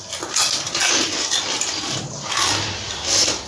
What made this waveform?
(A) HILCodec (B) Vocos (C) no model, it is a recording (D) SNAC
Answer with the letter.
C